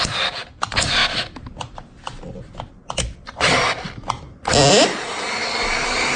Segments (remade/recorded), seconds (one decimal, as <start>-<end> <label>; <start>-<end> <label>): 0.0-6.2 recorded